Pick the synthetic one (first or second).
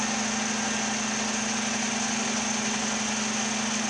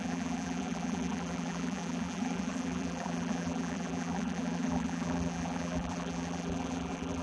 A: second